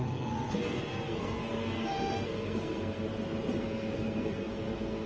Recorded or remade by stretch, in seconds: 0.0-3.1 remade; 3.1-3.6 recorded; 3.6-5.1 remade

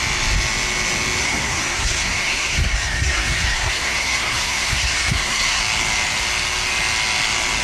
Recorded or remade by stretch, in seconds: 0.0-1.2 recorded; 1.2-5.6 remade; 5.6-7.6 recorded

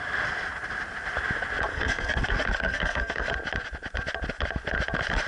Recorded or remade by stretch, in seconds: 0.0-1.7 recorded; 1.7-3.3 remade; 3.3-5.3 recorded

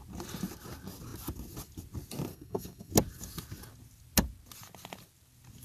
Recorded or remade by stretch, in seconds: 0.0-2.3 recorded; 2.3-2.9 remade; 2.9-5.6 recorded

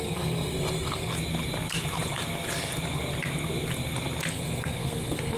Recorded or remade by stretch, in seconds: 0.0-1.1 remade; 1.1-4.3 recorded; 4.3-5.4 remade

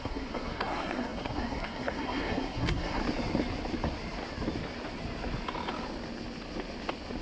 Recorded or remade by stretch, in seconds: 0.0-3.0 remade; 3.0-7.2 recorded

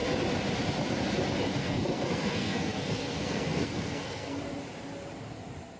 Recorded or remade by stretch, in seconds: 0.0-1.6 recorded; 1.6-4.4 remade; 4.4-5.8 recorded

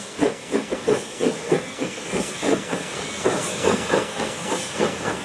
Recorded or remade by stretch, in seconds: 0.0-5.2 remade